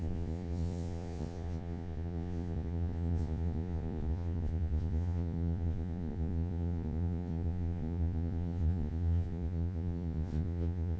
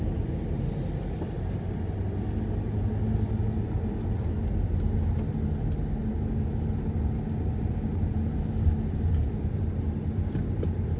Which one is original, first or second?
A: second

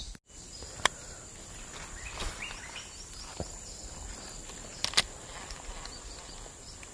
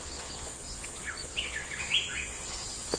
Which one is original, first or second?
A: first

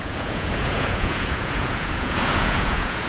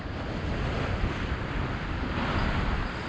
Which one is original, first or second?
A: second